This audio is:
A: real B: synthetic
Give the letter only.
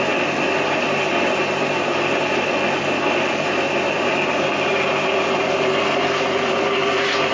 A